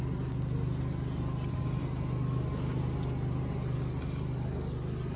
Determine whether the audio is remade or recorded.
recorded